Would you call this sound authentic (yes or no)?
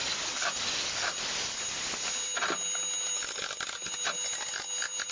yes